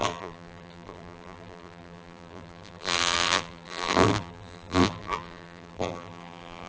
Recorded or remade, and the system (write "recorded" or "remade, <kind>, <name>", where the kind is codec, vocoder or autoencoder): remade, vocoder, BigVGAN v2